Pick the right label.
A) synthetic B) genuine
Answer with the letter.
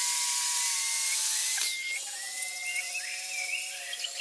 B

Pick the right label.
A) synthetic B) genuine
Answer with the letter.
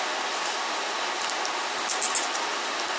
B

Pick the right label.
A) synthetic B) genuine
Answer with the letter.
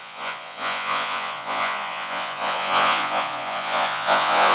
A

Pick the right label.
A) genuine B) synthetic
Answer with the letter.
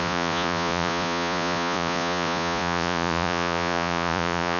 B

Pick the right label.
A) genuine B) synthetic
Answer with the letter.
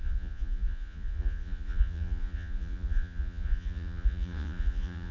B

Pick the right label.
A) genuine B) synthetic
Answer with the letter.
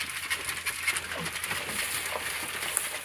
A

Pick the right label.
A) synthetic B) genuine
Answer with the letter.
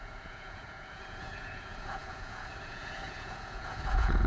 A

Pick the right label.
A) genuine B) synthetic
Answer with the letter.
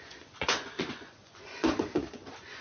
B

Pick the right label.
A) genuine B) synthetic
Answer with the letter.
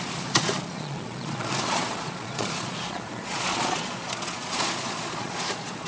B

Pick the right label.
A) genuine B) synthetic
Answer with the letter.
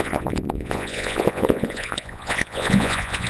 B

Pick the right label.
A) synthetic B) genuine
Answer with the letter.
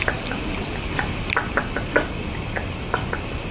B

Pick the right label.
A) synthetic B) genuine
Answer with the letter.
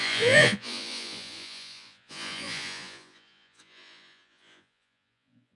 A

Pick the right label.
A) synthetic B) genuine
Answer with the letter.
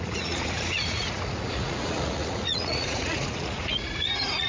A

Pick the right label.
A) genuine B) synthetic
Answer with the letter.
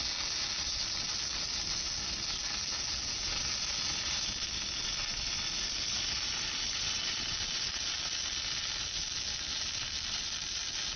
A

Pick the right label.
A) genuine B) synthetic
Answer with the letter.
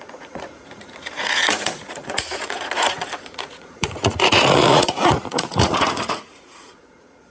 B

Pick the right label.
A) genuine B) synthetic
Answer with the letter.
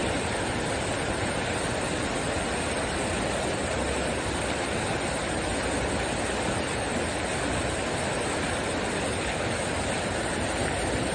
A